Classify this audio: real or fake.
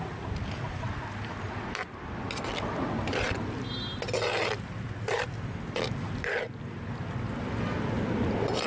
real